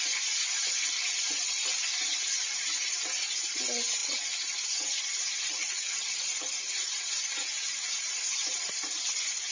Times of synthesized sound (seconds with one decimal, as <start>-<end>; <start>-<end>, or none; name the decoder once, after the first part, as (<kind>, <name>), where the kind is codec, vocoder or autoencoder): none